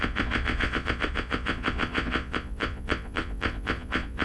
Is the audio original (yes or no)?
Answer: no